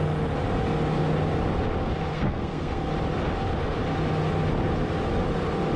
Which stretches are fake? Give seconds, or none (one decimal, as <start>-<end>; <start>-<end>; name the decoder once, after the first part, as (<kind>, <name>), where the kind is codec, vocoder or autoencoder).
2.1-2.9 (codec, SNAC)